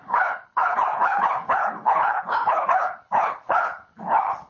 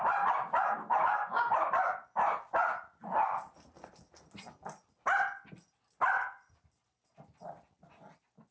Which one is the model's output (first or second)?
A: first